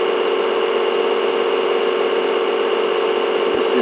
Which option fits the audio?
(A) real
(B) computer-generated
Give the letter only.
A